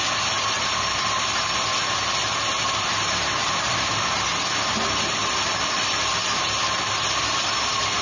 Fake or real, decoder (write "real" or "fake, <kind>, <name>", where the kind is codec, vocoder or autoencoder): real